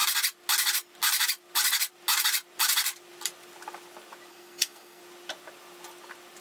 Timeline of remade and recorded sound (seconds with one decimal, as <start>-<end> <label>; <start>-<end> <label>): 0.0-4.3 recorded; 4.3-5.0 remade; 5.0-6.4 recorded